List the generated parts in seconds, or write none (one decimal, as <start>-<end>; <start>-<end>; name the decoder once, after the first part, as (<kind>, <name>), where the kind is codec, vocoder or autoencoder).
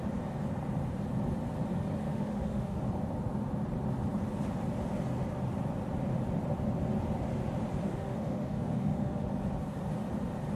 2.0-2.8 (autoencoder, DAC-VAE); 7.9-9.3